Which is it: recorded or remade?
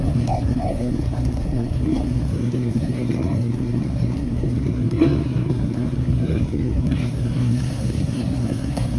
remade